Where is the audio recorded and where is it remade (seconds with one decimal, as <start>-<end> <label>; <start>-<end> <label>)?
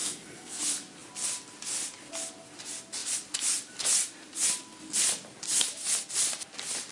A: 0.0-0.6 remade; 0.6-6.9 recorded